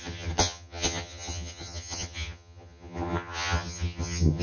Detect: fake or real fake